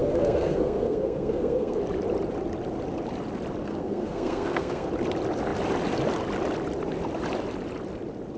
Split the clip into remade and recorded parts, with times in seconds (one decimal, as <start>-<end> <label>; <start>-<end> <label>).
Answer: 0.0-1.8 remade; 1.8-3.6 recorded; 3.6-4.9 remade; 4.9-8.4 recorded